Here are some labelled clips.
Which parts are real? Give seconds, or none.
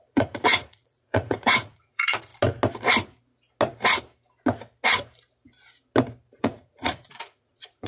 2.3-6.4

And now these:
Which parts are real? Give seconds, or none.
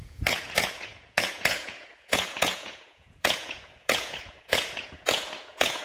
none